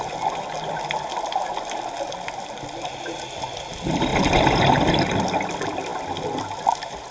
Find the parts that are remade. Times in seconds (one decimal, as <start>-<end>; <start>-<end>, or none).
none

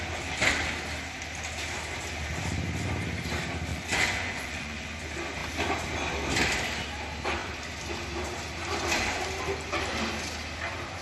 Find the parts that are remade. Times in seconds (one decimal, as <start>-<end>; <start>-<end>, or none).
3.7-4.8

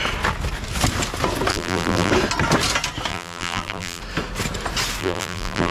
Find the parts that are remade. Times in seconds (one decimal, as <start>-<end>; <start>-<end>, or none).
1.5-2.1; 3.1-4.0; 5.0-5.7

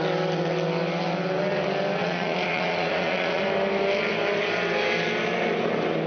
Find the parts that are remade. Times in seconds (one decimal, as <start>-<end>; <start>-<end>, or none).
2.0-3.4

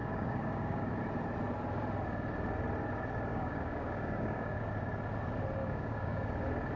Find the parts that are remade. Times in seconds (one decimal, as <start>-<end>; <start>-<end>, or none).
0.0-1.0; 3.3-4.7; 5.6-6.3

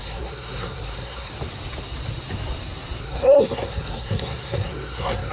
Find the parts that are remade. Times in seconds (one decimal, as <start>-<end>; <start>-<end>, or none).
0.0-1.3; 3.0-5.3